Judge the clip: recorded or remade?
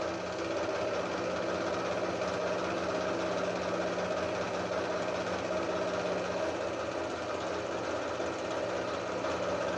recorded